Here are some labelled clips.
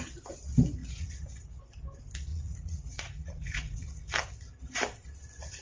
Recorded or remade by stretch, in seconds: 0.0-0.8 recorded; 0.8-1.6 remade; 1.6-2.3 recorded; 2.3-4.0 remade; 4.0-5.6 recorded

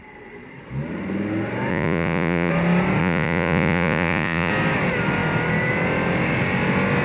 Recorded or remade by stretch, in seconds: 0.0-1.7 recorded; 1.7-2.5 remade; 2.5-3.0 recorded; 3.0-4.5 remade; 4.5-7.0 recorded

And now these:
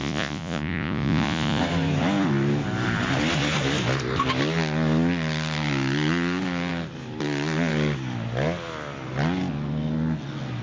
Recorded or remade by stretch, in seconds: 0.0-1.6 remade; 1.6-10.6 recorded

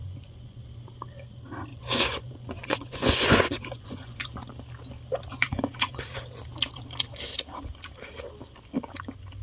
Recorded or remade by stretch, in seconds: 0.0-0.6 remade; 0.6-1.7 recorded; 1.7-4.3 remade; 4.3-5.3 recorded; 5.3-6.0 remade; 6.0-9.4 recorded

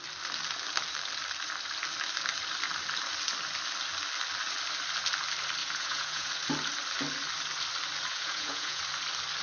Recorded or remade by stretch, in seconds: 0.0-5.6 recorded; 5.6-6.3 remade; 6.3-8.1 recorded; 8.1-8.8 remade; 8.8-9.4 recorded